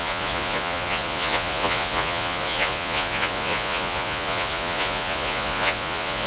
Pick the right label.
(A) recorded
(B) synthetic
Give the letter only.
B